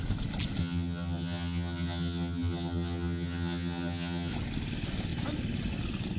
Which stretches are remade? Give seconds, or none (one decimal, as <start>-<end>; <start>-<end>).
0.6-4.3